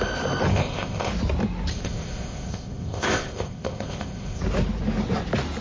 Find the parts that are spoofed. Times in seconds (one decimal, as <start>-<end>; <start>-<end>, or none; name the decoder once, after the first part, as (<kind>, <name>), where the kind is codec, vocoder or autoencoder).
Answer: 0.5-1.1 (codec, ZipCodec); 1.7-4.4